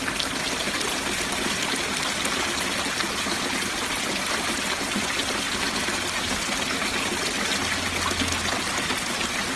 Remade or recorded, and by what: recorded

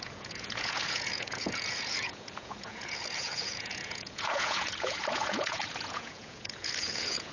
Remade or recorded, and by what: remade, vocoder, Vocos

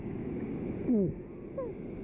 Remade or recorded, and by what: recorded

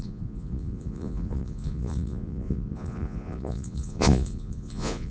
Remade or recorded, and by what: remade, vocoder, Vocos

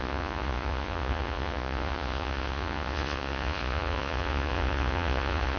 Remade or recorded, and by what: remade, vocoder, Vocos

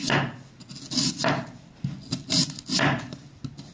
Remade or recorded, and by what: recorded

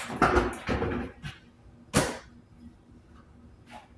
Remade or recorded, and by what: recorded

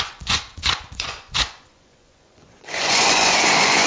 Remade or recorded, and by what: remade, vocoder, Vocos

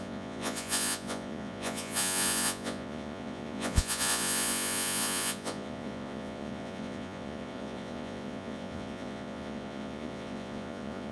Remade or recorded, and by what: remade, vocoder, Vocos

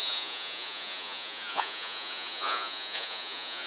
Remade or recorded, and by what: remade, vocoder, Vocos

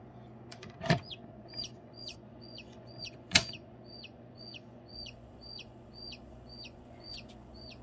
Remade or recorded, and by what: remade, vocoder, Vocos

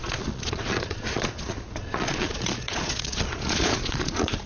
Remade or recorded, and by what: remade, vocoder, Vocos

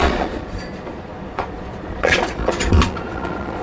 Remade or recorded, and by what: remade, vocoder, Vocos